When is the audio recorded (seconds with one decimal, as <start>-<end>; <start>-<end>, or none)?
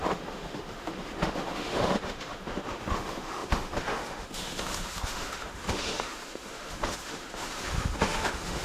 none